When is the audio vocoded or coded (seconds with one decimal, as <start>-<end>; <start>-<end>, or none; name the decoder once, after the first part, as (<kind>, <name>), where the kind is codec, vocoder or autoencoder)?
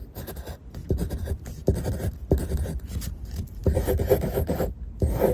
none